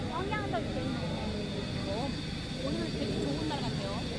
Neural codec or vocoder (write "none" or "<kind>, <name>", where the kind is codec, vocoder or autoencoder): none